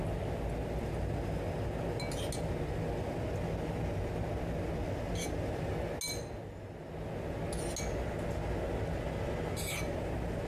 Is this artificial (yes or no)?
no